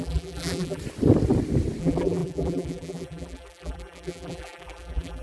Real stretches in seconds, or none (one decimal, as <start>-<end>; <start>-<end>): 0.8-1.8

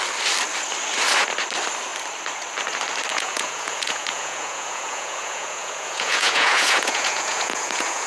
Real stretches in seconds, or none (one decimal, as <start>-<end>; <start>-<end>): 0.0-3.1

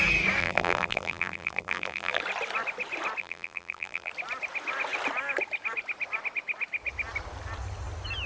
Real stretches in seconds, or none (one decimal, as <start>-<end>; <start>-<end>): 0.0-0.4; 2.2-3.2; 4.1-8.3

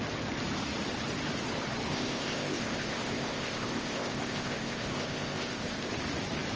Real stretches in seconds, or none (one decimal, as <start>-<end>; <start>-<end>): 0.0-1.9; 5.9-6.6

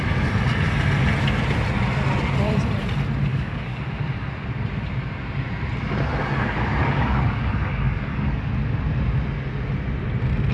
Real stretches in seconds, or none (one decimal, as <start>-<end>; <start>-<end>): 0.0-3.3; 3.8-6.8; 8.5-10.5